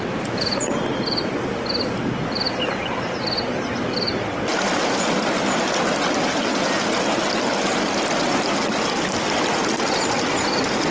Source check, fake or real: real